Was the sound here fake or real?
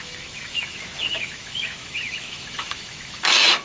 fake